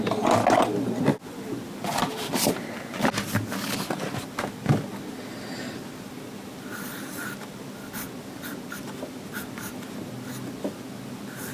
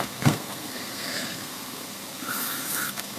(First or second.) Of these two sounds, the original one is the first